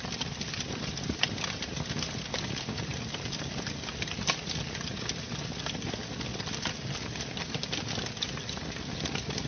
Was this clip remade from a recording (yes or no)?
no